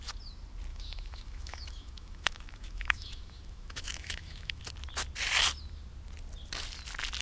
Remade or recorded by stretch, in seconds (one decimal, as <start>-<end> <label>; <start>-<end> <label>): 0.0-0.7 recorded; 0.7-4.6 remade; 4.6-7.2 recorded

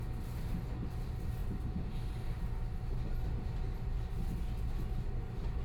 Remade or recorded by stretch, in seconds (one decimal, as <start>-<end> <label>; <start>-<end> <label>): 0.0-5.6 recorded

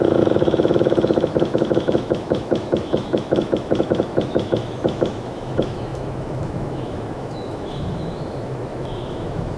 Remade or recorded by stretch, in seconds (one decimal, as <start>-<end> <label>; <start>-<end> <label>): 0.0-9.6 remade

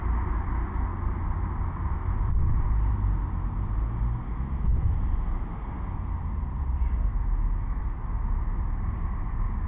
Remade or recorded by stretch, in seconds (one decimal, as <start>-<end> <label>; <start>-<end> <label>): 0.0-4.3 recorded; 4.3-5.0 remade; 5.0-7.1 recorded; 7.1-7.8 remade; 7.8-9.7 recorded